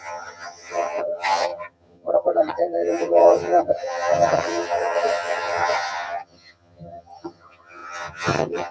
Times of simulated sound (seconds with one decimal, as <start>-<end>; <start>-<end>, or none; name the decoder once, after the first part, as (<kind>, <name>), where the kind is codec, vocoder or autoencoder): 0.0-8.7 (vocoder, HiFi-GAN)